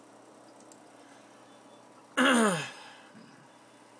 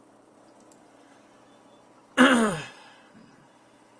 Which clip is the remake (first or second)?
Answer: second